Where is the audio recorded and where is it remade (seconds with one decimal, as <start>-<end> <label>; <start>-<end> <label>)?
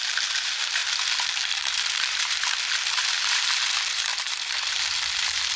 0.0-5.6 remade